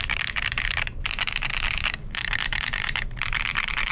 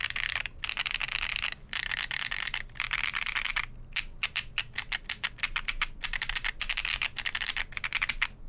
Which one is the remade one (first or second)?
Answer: first